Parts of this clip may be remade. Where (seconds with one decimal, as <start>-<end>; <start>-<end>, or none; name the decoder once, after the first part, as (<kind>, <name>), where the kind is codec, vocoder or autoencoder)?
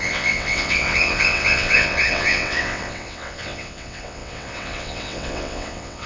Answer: 0.0-6.1 (vocoder, WaveNeXt)